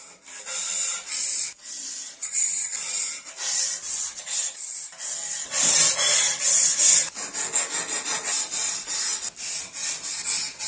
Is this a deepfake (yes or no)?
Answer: no